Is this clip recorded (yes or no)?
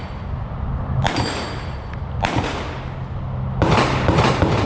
yes